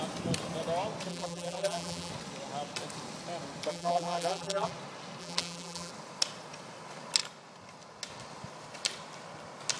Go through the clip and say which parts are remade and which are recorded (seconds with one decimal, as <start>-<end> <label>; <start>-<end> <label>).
0.0-1.1 recorded; 1.1-2.1 remade; 2.1-3.7 recorded; 3.7-4.7 remade; 4.7-5.2 recorded; 5.2-5.9 remade; 5.9-9.8 recorded